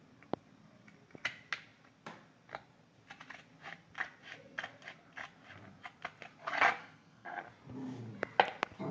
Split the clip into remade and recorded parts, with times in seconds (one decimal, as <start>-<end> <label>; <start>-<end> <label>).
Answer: 0.0-6.8 recorded; 6.8-7.4 remade; 7.4-8.9 recorded